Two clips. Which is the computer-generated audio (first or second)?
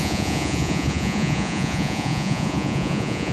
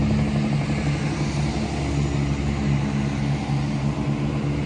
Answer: first